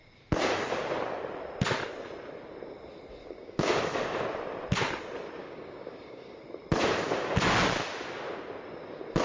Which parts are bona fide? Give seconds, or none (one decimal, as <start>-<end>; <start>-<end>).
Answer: 0.0-3.2; 3.8-5.4; 6.4-9.2